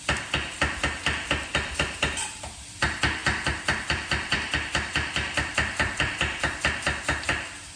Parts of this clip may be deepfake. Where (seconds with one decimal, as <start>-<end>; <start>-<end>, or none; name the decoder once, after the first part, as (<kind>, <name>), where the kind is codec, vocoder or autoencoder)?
0.0-7.8 (vocoder, BigVGAN v2)